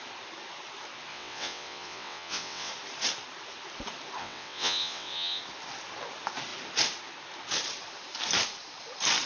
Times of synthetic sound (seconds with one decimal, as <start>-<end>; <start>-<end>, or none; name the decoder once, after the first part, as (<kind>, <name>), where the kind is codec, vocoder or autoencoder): 1.1-2.7 (vocoder, WaveNeXt); 4.2-5.4

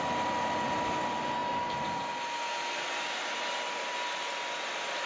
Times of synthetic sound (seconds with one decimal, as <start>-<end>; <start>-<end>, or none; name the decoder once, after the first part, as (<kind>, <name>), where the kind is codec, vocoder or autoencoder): none

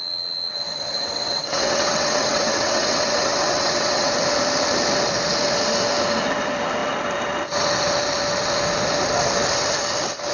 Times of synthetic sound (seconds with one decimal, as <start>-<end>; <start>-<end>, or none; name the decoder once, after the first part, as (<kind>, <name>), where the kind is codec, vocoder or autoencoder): 0.0-4.1 (vocoder, WaveNeXt)

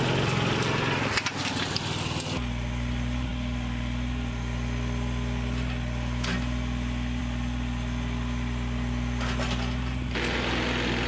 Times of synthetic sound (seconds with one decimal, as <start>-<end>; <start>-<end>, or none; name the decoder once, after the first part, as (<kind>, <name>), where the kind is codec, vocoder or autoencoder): none

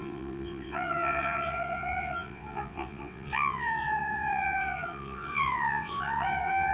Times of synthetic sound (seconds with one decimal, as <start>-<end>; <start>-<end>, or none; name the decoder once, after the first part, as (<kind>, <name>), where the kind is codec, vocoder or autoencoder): 0.0-6.7 (vocoder, WaveNeXt)

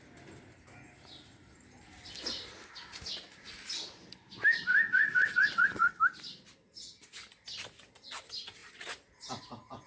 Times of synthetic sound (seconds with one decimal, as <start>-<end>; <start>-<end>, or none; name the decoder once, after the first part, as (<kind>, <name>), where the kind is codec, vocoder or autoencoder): 4.7-6.0 (vocoder, WaveNeXt)

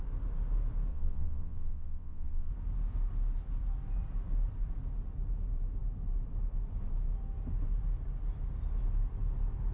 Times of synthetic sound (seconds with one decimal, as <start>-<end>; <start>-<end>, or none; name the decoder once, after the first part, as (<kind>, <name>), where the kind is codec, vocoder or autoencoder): 0.9-2.5 (vocoder, WaveNeXt)

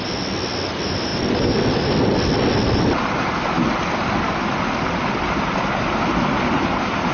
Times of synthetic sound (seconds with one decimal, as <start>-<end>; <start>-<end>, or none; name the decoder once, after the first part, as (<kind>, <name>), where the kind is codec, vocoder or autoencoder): none